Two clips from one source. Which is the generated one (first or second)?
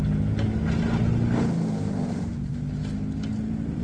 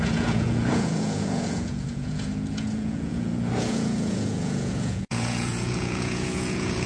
second